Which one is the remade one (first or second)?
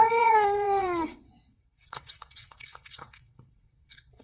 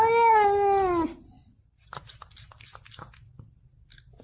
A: first